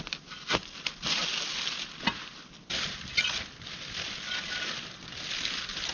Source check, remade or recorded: recorded